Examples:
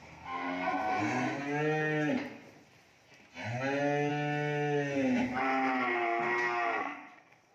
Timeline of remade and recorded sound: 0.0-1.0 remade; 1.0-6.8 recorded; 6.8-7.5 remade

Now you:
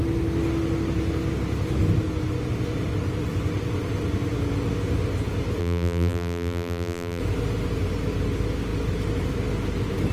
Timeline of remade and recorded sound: 0.0-5.6 recorded; 5.6-7.2 remade; 7.2-10.1 recorded

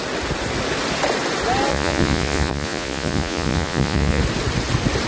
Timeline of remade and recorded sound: 0.0-1.7 recorded; 1.7-4.2 remade; 4.2-5.1 recorded